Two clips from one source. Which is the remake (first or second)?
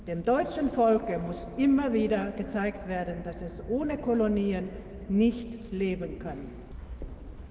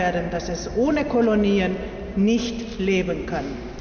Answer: first